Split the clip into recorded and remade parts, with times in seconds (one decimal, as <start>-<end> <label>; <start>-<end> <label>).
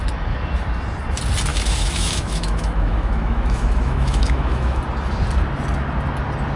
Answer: 0.0-1.5 recorded; 1.5-4.8 remade; 4.8-6.6 recorded